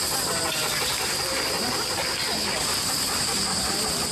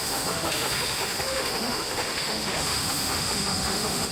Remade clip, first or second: second